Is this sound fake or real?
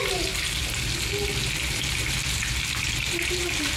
real